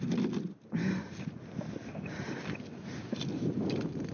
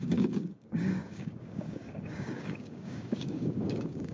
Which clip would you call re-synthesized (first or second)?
second